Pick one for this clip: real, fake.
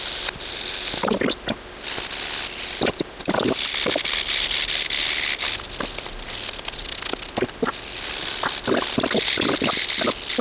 real